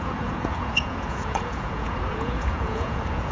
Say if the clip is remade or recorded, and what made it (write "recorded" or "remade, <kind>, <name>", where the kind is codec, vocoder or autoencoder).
remade, vocoder, Vocos